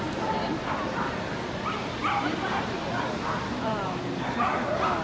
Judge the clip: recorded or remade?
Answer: recorded